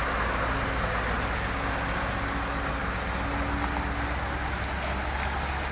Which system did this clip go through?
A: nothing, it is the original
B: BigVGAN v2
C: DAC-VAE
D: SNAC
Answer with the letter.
A